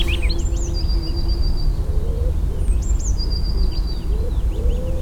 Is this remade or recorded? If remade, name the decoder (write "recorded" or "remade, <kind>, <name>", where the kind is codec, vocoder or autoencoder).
recorded